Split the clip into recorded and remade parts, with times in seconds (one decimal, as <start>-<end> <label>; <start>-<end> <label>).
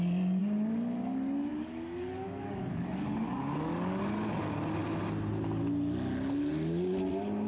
0.0-1.5 recorded; 1.5-4.0 remade; 4.0-7.5 recorded